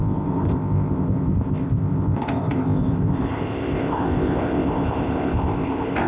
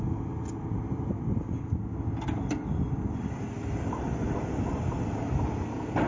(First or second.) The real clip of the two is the second